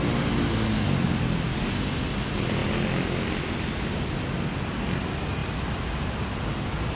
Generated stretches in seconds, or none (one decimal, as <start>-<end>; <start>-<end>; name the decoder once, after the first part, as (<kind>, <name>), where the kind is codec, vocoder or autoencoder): 2.6-4.3 (vocoder, BigVGAN v2); 5.4-7.0